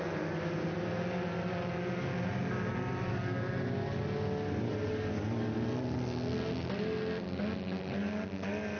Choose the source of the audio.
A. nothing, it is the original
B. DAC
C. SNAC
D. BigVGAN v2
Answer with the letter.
A